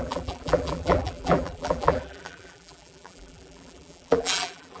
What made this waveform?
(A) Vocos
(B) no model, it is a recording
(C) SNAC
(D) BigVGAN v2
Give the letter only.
D